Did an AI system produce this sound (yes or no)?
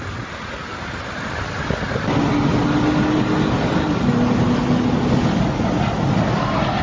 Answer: no